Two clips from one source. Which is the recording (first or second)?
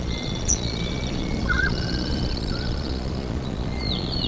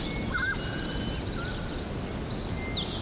second